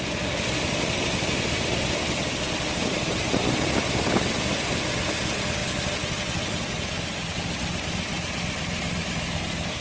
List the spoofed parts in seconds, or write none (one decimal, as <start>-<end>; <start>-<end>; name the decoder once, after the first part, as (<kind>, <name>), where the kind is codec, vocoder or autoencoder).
none